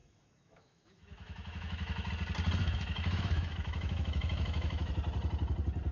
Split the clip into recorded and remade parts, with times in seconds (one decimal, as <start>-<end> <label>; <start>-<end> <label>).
0.0-2.1 remade; 2.1-2.6 recorded; 2.6-4.9 remade; 4.9-5.9 recorded